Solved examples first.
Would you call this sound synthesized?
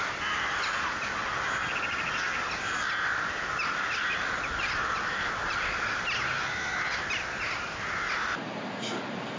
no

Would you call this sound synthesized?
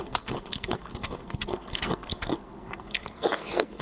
yes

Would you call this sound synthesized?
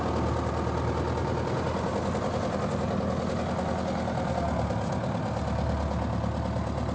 no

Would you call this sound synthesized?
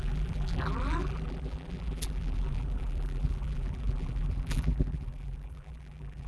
yes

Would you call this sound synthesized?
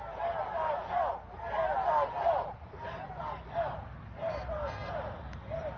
no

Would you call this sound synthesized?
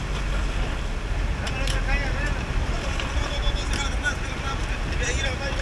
no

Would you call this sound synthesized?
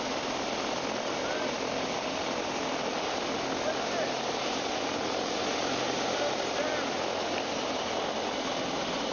no